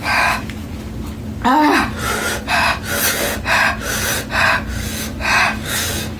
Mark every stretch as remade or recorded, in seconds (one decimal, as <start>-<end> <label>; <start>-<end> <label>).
0.0-6.2 recorded